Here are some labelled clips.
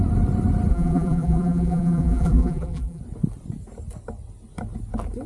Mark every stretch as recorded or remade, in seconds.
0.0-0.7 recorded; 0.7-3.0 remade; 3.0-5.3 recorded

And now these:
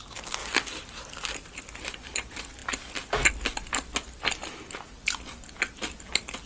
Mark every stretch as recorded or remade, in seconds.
0.0-6.5 recorded

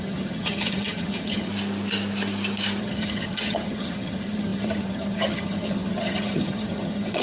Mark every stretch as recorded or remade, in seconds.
0.0-1.5 remade; 1.5-2.8 recorded; 2.8-7.2 remade

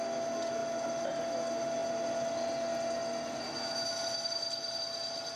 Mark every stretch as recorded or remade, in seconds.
0.0-5.4 recorded